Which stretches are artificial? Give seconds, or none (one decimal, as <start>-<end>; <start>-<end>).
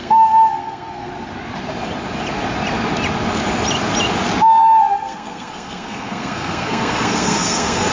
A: 0.0-1.1; 4.8-7.9